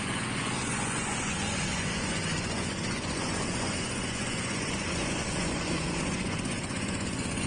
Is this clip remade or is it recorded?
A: remade